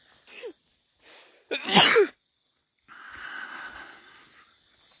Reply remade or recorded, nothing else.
recorded